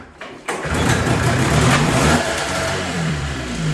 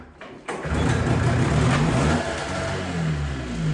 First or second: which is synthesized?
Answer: first